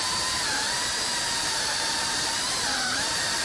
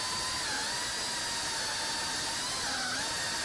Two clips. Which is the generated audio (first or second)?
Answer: first